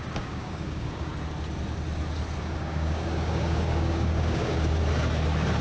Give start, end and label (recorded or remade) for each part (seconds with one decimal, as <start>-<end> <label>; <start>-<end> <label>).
0.0-1.1 remade; 1.1-2.4 recorded; 2.4-4.8 remade; 4.8-5.6 recorded